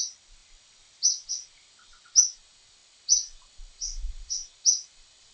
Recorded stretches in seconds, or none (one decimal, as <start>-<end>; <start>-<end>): 0.0-5.3